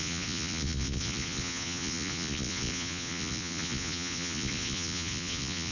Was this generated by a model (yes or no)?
yes